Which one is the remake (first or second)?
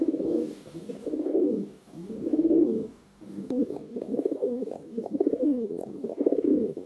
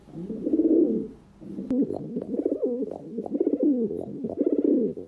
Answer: first